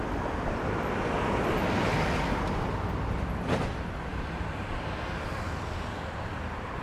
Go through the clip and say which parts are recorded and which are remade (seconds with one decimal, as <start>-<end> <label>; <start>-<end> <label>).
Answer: 0.0-6.8 recorded